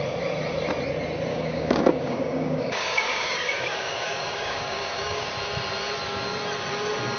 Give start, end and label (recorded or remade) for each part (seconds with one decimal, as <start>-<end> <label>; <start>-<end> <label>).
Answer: 0.0-1.3 recorded; 1.3-5.3 remade; 5.3-7.2 recorded